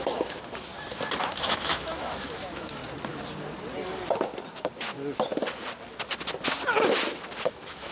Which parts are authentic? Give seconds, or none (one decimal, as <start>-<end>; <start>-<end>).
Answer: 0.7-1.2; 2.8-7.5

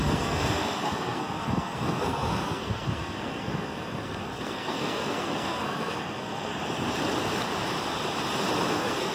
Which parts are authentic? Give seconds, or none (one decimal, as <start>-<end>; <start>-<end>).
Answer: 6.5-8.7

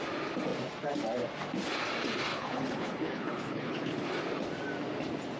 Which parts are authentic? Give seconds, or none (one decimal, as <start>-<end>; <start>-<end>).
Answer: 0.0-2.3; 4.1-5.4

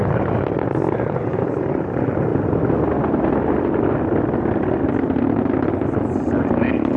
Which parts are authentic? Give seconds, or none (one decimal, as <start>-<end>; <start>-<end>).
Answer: 0.0-7.0

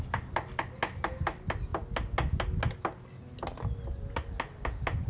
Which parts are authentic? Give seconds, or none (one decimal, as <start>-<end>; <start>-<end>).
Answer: 0.0-5.1